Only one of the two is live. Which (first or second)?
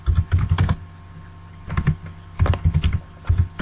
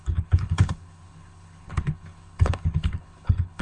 first